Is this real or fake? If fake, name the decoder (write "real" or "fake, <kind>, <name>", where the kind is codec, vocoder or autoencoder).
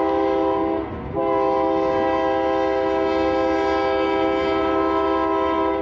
real